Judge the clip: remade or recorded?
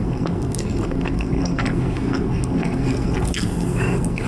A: remade